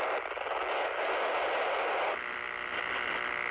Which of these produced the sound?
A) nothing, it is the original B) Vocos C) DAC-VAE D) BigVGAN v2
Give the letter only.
A